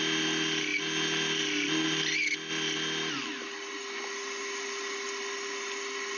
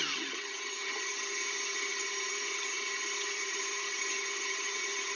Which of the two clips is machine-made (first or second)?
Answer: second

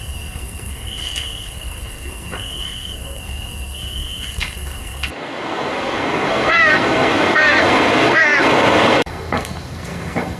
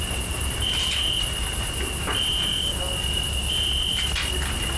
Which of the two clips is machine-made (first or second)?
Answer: first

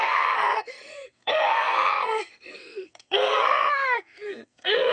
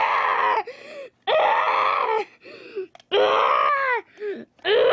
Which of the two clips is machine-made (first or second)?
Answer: first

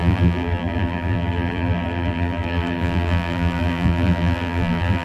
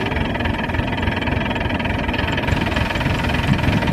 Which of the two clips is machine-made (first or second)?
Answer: first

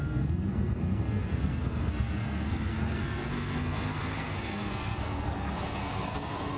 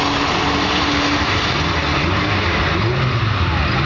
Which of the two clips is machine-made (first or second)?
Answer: first